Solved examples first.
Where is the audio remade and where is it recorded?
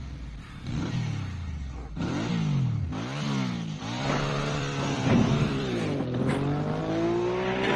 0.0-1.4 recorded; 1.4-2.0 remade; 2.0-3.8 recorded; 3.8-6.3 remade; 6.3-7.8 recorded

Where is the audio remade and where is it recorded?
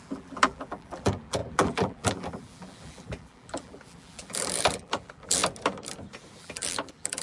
0.0-5.4 remade; 5.4-6.4 recorded; 6.4-7.2 remade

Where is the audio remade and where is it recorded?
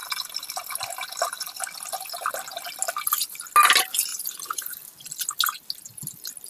0.0-4.1 recorded; 4.1-4.8 remade; 4.8-6.5 recorded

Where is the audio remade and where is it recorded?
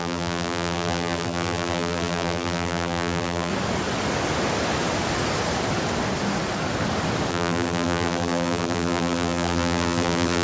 0.0-3.5 remade; 3.5-7.3 recorded; 7.3-10.4 remade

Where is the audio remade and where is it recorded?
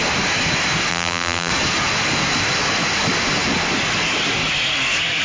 0.0-0.9 recorded; 0.9-1.5 remade; 1.5-5.2 recorded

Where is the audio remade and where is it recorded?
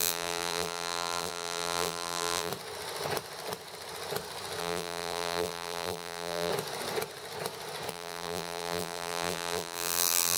0.0-2.5 remade; 2.5-4.6 recorded; 4.6-6.5 remade; 6.5-7.9 recorded; 7.9-10.4 remade